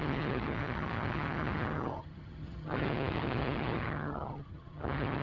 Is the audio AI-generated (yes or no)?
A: yes